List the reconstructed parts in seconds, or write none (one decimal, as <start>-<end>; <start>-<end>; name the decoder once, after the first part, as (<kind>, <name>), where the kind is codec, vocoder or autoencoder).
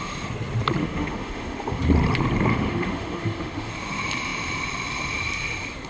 0.8-1.8 (autoencoder, DAC-VAE); 2.5-3.7